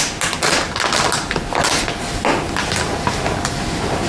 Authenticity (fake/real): real